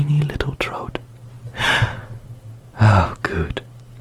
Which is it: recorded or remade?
recorded